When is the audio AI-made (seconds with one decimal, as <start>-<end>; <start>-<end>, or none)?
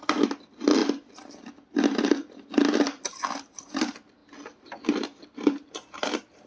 none